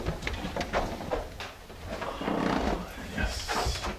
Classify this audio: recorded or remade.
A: recorded